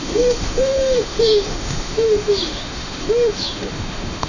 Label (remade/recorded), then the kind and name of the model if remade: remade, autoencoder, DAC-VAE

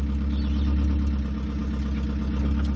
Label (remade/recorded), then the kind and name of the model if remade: recorded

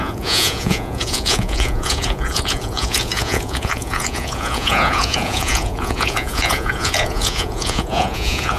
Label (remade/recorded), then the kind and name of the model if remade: remade, vocoder, Vocos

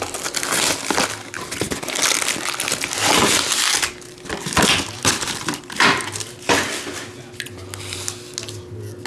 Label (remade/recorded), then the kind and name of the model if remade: recorded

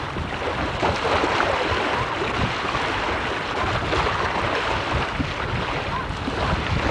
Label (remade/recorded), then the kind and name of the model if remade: recorded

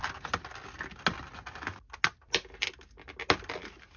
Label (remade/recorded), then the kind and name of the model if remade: recorded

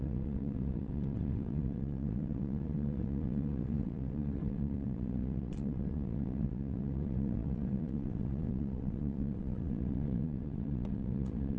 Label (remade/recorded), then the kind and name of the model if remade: remade, vocoder, WaveNeXt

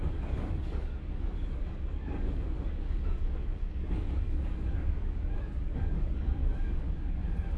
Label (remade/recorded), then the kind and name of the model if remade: remade, codec, DAC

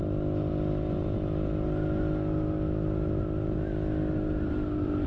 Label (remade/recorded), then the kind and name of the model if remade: recorded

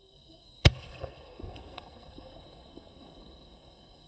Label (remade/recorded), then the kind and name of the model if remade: remade, codec, SNAC